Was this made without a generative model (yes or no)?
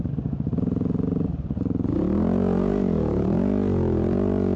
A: yes